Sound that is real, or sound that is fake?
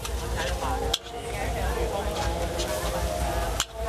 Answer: real